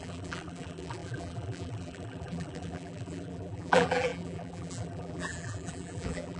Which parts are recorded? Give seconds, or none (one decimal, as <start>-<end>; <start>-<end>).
none